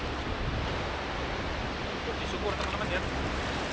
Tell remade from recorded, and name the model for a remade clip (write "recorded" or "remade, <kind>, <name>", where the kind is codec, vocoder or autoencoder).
recorded